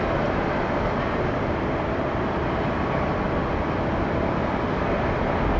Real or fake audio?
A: real